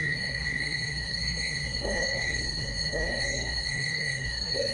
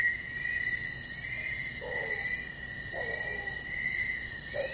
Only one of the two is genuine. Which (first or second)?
second